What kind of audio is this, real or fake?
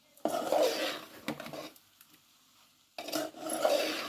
real